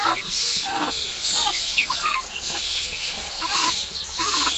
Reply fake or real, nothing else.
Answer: fake